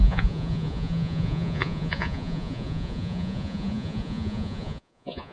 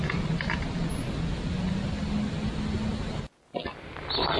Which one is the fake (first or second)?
first